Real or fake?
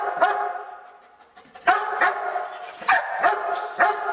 real